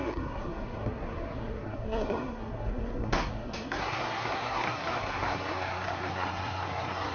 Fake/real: fake